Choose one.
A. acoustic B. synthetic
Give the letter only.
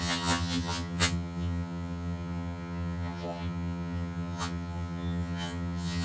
B